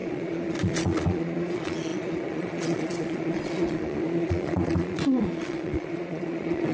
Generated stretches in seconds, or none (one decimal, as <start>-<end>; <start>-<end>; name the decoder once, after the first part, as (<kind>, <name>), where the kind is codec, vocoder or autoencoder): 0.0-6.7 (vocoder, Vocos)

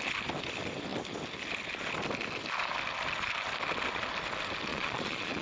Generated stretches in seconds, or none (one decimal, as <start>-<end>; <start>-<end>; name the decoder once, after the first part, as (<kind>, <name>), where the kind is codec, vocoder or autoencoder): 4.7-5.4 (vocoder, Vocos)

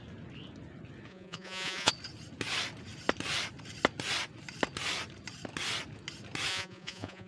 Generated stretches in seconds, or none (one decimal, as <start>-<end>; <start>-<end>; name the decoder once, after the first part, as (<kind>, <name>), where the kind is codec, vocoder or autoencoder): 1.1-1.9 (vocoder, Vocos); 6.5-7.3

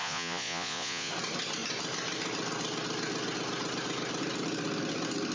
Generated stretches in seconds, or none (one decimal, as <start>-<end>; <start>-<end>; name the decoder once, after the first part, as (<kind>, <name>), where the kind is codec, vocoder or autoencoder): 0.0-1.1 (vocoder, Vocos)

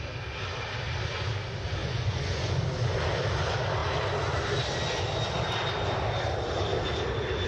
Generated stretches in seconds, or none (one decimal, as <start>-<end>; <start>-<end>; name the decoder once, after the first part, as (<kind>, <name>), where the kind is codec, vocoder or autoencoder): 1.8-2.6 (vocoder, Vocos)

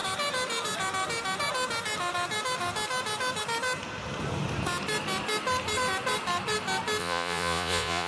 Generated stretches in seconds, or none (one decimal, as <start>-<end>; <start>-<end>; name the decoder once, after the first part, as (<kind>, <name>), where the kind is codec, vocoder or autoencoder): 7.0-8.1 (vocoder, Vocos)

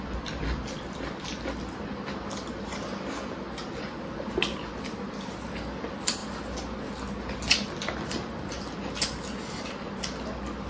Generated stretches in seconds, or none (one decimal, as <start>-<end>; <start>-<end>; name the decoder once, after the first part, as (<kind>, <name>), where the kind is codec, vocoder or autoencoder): none